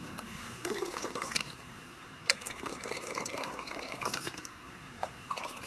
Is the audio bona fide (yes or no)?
no